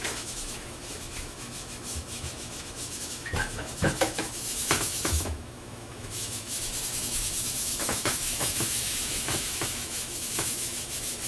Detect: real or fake fake